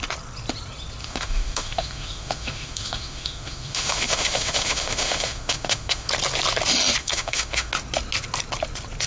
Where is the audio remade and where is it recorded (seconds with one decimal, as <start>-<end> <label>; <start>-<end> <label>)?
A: 0.0-1.0 recorded; 1.0-6.1 remade; 6.1-7.0 recorded; 7.0-7.7 remade; 7.7-9.1 recorded